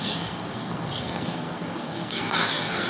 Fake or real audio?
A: fake